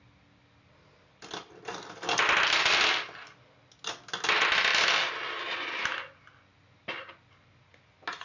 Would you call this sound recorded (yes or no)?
yes